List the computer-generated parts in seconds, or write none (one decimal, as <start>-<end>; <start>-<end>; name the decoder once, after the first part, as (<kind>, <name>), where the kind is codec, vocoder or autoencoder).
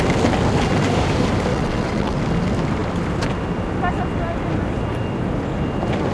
1.5-2.2 (vocoder, WaveNeXt)